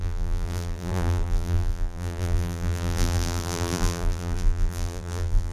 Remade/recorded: remade